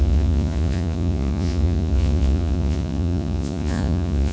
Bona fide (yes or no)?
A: no